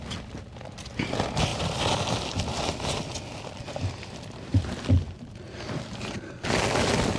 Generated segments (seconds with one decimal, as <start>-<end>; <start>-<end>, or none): 1.5-2.3